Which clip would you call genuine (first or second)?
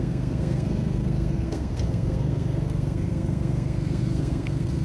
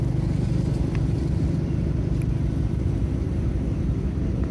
second